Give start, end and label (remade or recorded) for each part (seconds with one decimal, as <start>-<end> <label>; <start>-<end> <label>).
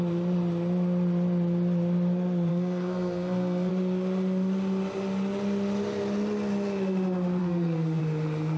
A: 0.0-2.5 recorded; 2.5-3.7 remade; 3.7-7.4 recorded; 7.4-8.0 remade; 8.0-8.6 recorded